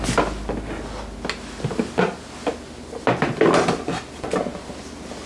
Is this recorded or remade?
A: recorded